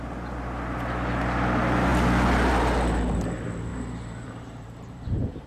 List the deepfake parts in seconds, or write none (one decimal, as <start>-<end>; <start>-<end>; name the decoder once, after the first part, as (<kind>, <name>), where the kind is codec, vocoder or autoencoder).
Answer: 3.7-5.5 (vocoder, BigVGAN v2)